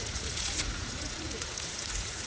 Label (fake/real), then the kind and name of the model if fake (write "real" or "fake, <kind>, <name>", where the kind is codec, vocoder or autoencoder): fake, vocoder, Vocos